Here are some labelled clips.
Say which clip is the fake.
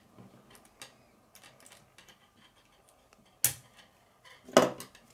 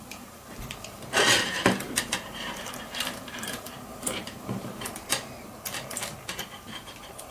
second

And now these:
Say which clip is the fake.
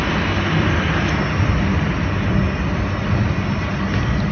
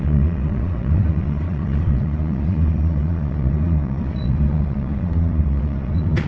second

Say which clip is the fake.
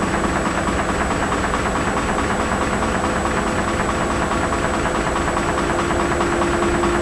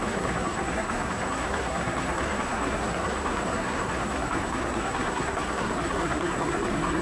second